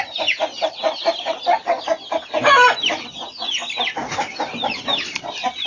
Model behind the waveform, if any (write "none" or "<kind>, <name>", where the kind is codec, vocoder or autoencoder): none